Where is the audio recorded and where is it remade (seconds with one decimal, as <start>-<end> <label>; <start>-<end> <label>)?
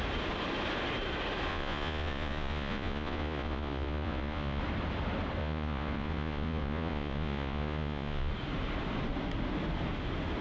0.0-1.5 recorded; 1.5-4.6 remade; 4.6-5.4 recorded; 5.4-8.3 remade; 8.3-10.4 recorded